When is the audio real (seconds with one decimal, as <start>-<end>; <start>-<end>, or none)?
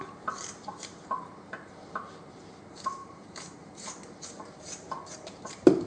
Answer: none